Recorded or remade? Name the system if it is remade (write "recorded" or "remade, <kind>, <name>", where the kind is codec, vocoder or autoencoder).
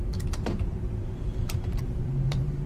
remade, vocoder, BigVGAN v2